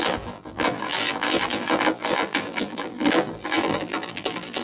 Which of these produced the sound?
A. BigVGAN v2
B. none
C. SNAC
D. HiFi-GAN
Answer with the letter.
A